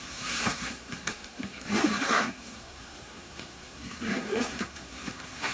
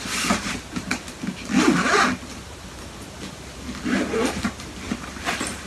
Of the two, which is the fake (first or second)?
first